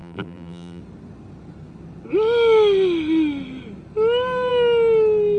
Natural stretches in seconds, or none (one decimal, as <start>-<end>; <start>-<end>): 0.8-5.4